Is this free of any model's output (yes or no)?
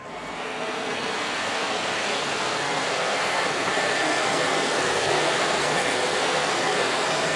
no